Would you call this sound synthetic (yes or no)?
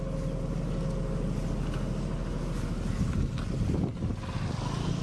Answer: no